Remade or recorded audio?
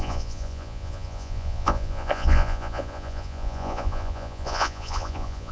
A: remade